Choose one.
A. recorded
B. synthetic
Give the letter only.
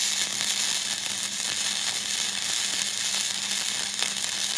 A